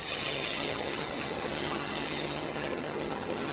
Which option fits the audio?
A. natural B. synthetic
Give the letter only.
B